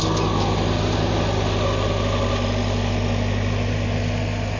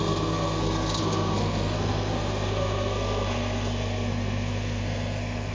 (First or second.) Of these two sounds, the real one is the first